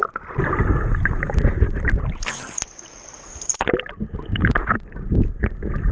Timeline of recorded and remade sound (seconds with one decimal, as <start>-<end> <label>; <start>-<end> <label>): 0.0-5.9 recorded